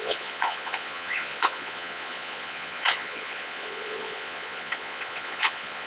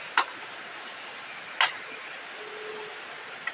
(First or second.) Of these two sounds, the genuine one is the second